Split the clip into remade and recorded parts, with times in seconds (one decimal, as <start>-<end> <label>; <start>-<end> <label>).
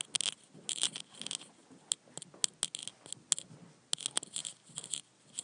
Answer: 0.0-5.4 recorded